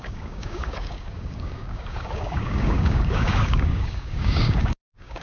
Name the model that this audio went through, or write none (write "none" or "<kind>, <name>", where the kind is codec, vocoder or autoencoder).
codec, DAC